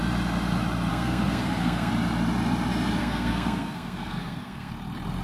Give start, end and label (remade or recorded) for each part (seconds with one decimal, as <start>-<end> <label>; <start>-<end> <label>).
0.0-0.9 recorded; 0.9-1.9 remade; 1.9-3.0 recorded; 3.0-4.7 remade; 4.7-5.2 recorded